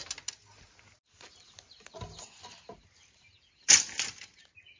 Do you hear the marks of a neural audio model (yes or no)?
no